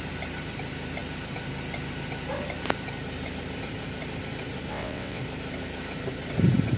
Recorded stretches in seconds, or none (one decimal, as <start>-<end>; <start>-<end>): 0.0-4.7; 5.2-6.8